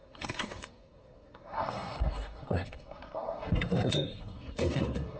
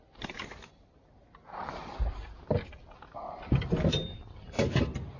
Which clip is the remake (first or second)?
first